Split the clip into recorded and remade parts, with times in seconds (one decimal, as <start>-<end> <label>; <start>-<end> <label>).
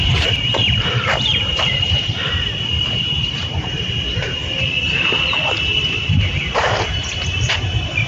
0.0-4.4 remade; 4.4-6.2 recorded; 6.2-8.1 remade